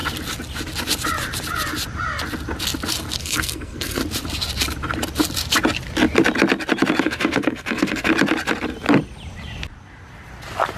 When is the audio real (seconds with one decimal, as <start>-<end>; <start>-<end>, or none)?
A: 0.0-3.2; 4.0-7.0; 8.1-10.8